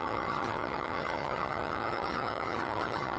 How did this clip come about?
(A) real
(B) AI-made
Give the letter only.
B